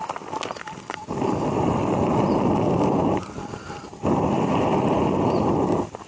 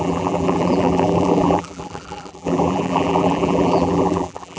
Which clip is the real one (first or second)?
first